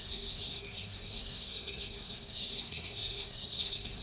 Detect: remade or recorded remade